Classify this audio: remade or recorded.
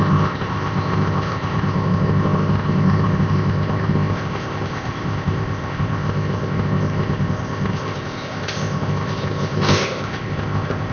remade